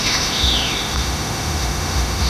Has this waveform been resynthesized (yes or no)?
yes